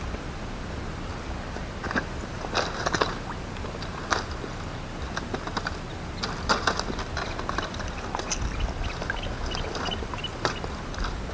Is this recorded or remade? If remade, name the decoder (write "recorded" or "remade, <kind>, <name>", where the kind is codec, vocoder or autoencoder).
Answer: recorded